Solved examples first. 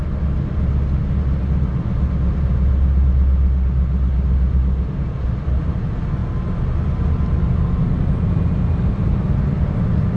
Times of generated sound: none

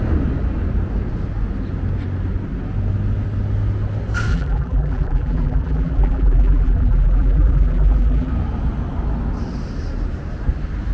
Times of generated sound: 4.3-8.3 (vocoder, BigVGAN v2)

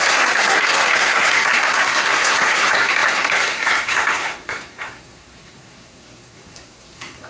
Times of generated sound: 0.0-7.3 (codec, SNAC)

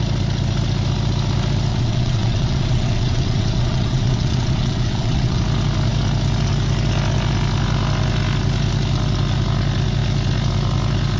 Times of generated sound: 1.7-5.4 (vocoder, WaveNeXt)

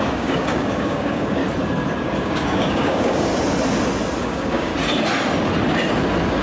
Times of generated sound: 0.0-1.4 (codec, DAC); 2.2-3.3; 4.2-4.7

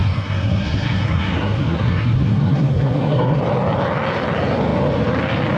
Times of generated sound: 0.0-3.4 (codec, SNAC)

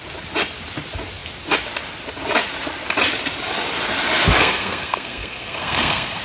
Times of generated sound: 4.4-6.2 (codec, SNAC)

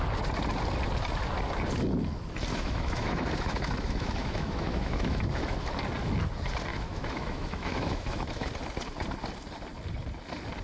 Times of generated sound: 2.5-5.7 (autoencoder, DAC-VAE); 6.7-8.5